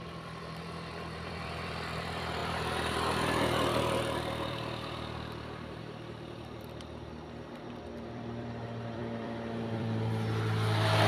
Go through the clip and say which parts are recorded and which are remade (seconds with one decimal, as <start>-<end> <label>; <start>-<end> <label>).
0.0-11.1 remade